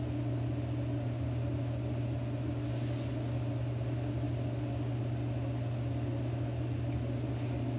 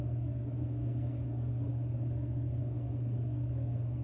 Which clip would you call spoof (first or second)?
second